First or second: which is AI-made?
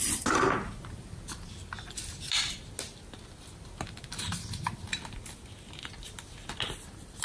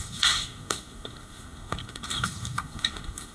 second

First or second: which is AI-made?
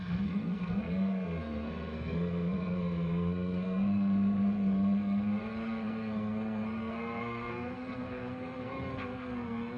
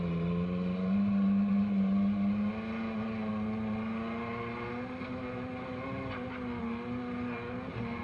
first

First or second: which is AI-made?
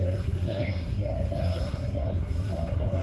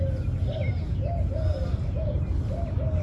first